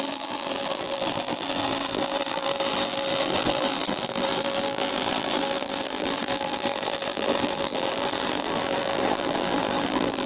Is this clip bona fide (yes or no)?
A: no